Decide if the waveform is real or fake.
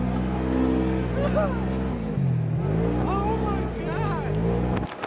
real